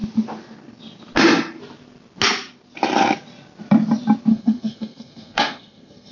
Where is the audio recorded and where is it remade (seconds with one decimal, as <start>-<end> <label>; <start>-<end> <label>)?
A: 0.0-4.3 recorded; 4.3-6.1 remade